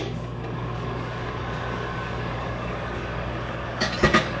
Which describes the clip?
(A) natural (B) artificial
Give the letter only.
B